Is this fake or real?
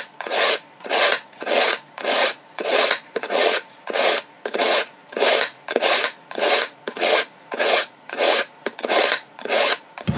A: fake